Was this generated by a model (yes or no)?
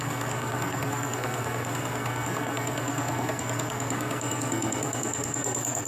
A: yes